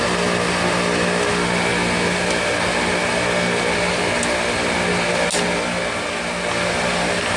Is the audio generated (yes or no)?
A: no